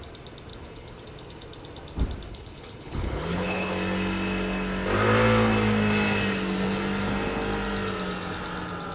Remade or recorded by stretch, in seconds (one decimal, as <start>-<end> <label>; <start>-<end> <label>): 0.0-0.5 recorded; 0.5-1.0 remade; 1.0-2.3 recorded; 2.3-3.7 remade; 3.7-8.9 recorded